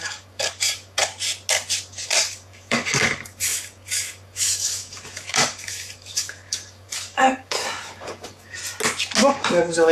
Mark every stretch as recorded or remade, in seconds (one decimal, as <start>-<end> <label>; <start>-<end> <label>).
0.0-1.1 remade; 1.1-1.9 recorded; 1.9-8.6 remade; 8.6-9.3 recorded; 9.3-9.9 remade